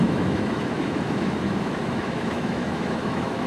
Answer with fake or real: fake